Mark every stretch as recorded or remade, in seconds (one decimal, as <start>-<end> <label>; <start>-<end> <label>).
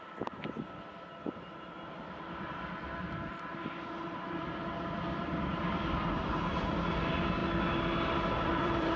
0.0-7.4 remade; 7.4-8.3 recorded; 8.3-9.0 remade